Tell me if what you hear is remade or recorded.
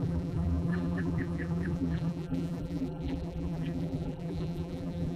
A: remade